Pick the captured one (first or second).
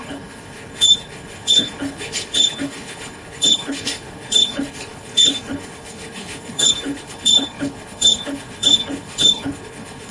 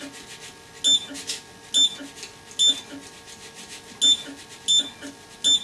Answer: second